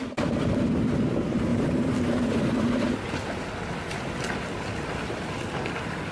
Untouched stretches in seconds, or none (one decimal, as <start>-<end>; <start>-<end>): 0.0-1.5; 2.2-6.1